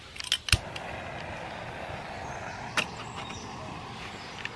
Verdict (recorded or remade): recorded